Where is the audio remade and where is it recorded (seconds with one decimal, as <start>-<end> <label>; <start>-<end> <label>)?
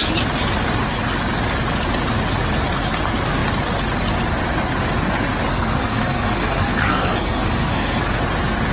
0.0-5.5 recorded; 5.5-8.0 remade; 8.0-8.7 recorded